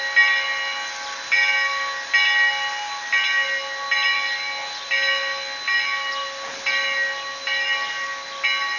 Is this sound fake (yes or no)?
no